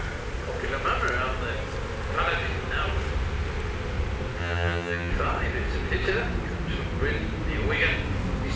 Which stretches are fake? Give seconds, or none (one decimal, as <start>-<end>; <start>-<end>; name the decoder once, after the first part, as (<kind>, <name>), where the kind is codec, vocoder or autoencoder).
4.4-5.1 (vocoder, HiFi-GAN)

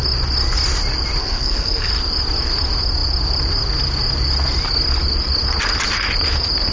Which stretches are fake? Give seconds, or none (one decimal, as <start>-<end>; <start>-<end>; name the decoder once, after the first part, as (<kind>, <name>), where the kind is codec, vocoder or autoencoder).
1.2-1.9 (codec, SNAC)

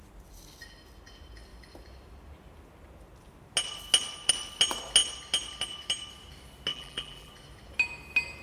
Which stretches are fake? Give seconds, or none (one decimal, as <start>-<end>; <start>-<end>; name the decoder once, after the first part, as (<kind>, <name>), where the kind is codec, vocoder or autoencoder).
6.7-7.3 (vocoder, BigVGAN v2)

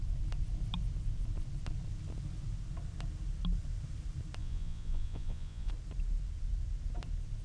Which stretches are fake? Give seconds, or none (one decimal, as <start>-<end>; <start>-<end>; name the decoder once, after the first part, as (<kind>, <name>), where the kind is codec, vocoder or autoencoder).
4.4-5.7 (vocoder, Vocos)